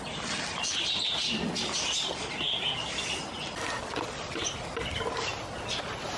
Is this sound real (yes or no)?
yes